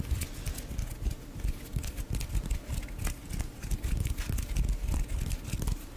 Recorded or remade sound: recorded